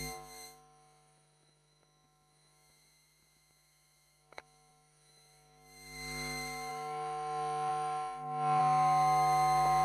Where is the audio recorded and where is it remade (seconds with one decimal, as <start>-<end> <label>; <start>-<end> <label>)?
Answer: 0.0-9.8 remade